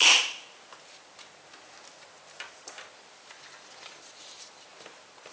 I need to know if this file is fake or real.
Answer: real